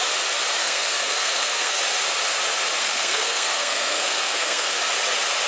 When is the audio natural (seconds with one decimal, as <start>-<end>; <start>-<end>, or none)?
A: 0.0-0.6; 1.8-2.8; 4.8-5.5